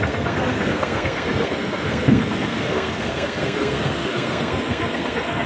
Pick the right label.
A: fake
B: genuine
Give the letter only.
A